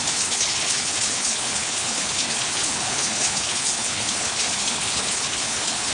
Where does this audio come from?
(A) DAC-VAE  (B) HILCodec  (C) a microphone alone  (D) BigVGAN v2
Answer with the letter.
B